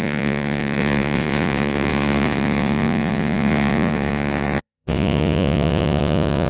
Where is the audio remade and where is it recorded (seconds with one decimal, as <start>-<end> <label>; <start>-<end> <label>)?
0.0-6.5 remade